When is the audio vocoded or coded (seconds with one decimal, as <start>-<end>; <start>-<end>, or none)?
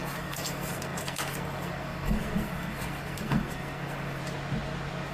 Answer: 0.0-4.2